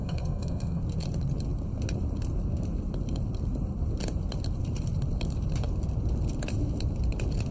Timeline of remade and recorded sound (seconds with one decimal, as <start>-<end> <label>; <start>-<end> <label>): 0.0-0.8 remade; 0.8-7.5 recorded